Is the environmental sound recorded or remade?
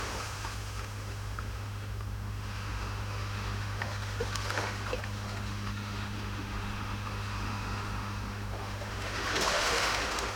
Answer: remade